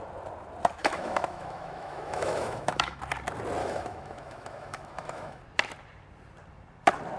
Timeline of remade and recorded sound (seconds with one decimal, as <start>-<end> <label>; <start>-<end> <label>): 0.0-0.8 recorded; 0.8-3.0 remade; 3.0-3.6 recorded; 3.6-5.4 remade; 5.4-7.2 recorded